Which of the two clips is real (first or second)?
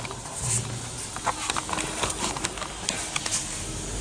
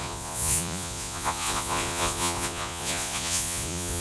first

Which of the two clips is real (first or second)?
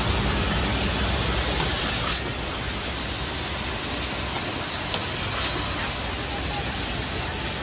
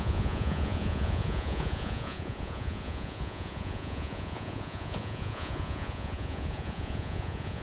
first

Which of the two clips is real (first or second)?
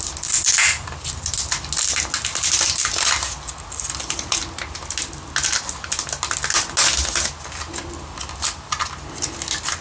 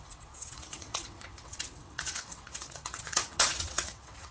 first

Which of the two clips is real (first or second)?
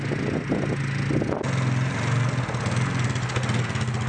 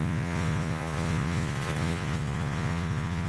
first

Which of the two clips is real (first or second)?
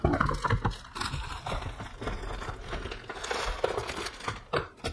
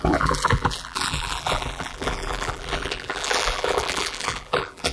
first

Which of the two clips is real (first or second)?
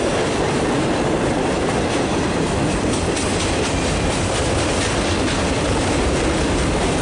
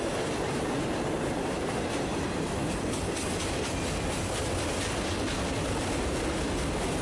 second